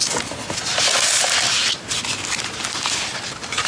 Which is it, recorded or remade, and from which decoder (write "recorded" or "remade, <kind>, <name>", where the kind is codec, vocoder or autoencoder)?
recorded